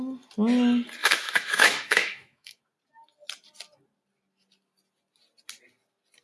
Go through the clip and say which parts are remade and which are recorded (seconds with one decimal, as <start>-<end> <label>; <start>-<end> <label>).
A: 0.0-1.0 recorded; 1.0-2.6 remade; 2.6-6.2 recorded

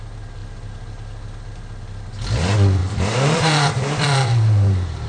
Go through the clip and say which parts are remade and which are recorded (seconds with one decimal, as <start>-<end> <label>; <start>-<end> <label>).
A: 0.0-2.8 recorded; 2.8-5.1 remade

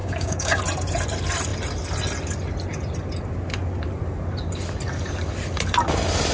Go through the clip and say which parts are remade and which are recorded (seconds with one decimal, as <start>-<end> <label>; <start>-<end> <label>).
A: 0.0-0.6 remade; 0.6-6.3 recorded

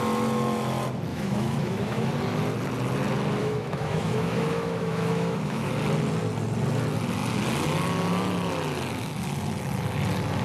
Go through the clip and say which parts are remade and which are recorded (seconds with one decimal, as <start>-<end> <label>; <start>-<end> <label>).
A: 0.0-1.1 recorded; 1.1-2.1 remade; 2.1-3.4 recorded; 3.4-5.7 remade; 5.7-10.4 recorded